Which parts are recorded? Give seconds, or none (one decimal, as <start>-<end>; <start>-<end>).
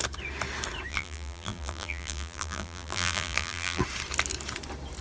0.0-0.9; 3.8-5.0